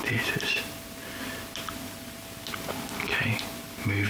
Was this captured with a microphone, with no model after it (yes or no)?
no